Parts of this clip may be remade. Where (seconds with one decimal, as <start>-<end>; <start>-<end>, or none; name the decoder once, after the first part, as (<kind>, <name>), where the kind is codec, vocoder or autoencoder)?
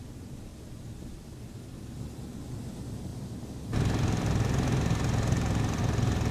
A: none